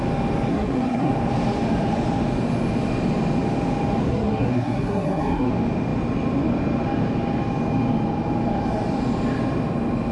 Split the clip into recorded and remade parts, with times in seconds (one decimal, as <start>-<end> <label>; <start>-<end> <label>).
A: 0.0-0.5 recorded; 0.5-1.1 remade; 1.1-4.0 recorded; 4.0-5.5 remade; 5.5-10.1 recorded